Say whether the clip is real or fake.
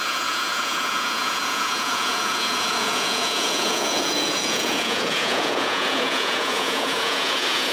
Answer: fake